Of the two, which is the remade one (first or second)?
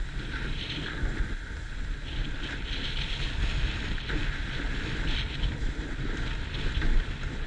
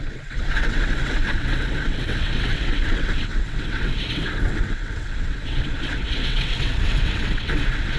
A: second